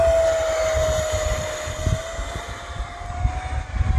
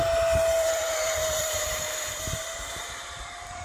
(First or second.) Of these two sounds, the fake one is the second